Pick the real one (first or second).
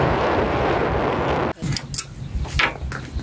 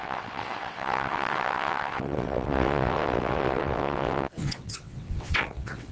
first